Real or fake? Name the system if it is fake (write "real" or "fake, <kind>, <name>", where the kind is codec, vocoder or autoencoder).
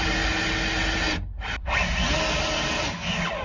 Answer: real